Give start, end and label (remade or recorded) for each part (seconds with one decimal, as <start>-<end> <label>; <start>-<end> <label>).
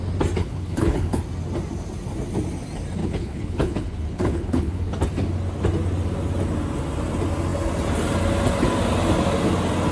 0.0-0.4 recorded; 0.4-1.2 remade; 1.2-3.0 recorded; 3.0-4.9 remade; 4.9-9.9 recorded